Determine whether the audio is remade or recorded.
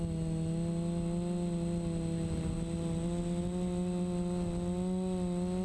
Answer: recorded